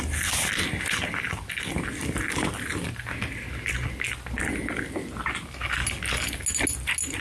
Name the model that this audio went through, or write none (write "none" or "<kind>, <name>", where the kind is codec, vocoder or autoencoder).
none